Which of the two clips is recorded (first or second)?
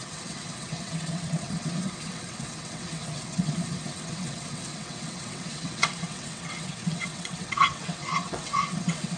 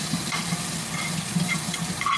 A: second